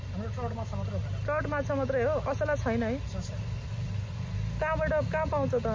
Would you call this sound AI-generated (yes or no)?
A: no